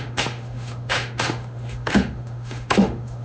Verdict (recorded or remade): remade